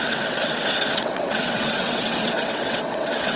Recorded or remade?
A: remade